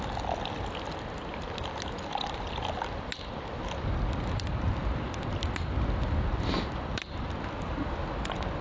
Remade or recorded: recorded